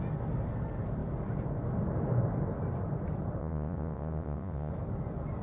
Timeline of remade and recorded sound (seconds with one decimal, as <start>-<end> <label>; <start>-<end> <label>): 0.0-3.4 recorded; 3.4-4.7 remade; 4.7-5.4 recorded